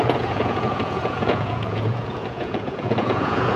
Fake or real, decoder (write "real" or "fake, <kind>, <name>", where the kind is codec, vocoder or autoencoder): fake, vocoder, Vocos